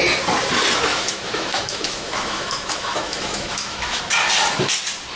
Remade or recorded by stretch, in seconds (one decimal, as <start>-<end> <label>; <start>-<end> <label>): 0.0-0.9 recorded; 0.9-4.0 remade; 4.0-5.2 recorded